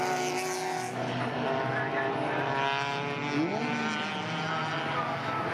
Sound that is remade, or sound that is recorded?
recorded